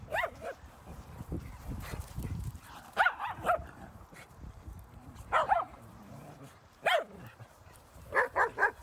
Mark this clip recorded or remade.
remade